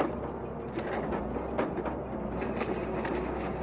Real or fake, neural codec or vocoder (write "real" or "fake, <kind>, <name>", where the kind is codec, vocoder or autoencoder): real